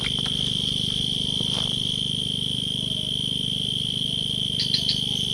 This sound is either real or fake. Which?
real